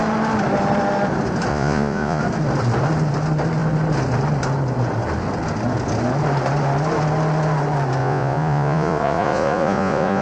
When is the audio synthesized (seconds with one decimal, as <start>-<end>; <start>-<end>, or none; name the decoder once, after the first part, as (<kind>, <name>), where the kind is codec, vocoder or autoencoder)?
1.5-2.2 (vocoder, Vocos); 8.0-10.2